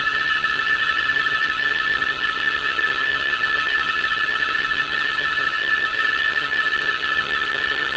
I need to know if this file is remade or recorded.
remade